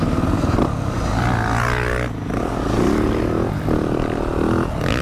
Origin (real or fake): real